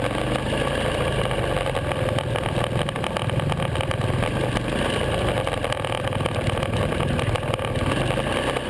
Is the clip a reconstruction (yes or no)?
no